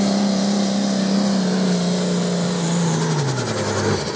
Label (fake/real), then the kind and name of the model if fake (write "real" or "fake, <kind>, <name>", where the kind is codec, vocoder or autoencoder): real